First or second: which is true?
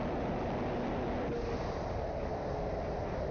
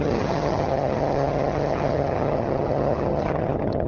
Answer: first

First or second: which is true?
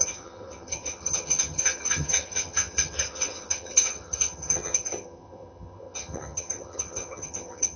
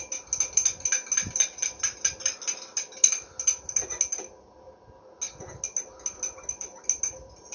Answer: second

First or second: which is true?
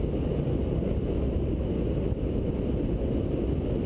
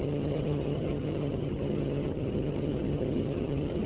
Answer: first